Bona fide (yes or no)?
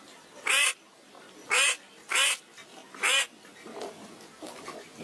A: yes